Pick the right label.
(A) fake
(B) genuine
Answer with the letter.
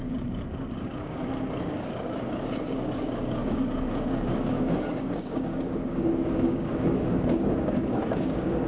A